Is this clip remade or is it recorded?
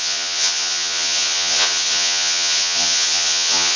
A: remade